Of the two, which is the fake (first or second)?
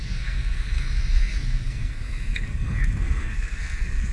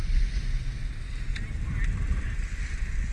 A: first